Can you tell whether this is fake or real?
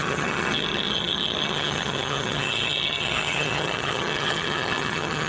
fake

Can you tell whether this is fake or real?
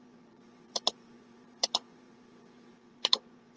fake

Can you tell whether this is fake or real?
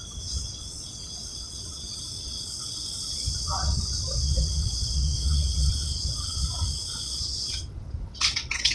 fake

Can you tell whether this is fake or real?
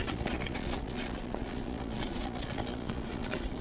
fake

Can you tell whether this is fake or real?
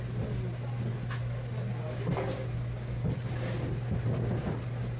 real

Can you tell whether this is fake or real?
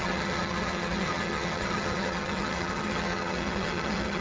fake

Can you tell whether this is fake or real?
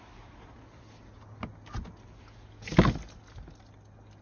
real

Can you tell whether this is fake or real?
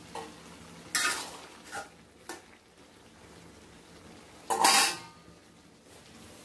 real